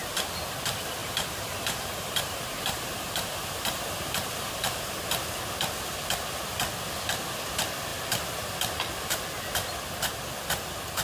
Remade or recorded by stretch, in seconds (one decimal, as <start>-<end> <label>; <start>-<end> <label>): 0.0-1.0 recorded; 1.0-4.9 remade; 4.9-11.0 recorded